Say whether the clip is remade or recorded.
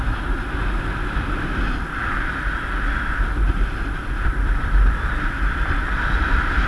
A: recorded